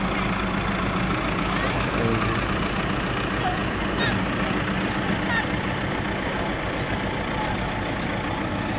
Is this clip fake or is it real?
real